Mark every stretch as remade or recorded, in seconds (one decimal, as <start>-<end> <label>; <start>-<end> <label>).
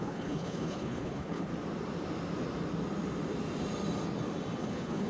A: 0.0-1.5 remade; 1.5-4.6 recorded; 4.6-5.1 remade